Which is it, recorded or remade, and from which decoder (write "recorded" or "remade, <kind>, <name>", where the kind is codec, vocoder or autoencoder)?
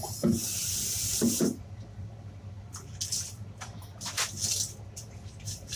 recorded